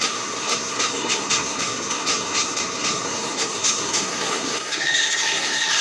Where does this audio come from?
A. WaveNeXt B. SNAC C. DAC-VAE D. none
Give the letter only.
B